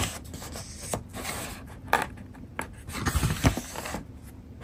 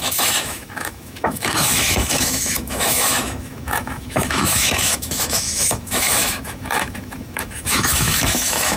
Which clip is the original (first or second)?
first